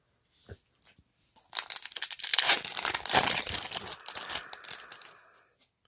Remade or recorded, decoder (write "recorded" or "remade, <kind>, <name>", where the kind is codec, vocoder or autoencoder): recorded